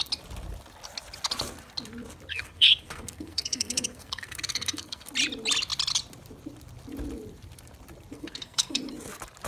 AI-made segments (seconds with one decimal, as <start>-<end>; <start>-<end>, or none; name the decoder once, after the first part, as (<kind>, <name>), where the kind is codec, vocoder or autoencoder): 2.3-5.1 (codec, SNAC); 8.1-8.8